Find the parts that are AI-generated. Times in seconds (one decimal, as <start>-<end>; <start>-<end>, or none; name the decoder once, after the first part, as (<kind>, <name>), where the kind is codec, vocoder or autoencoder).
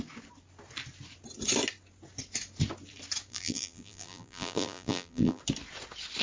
3.3-5.4 (vocoder, BigVGAN v2)